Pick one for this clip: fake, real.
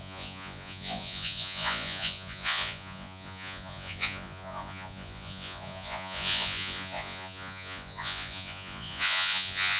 fake